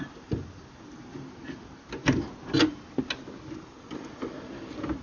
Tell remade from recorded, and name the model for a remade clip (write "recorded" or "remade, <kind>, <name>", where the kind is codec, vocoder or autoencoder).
recorded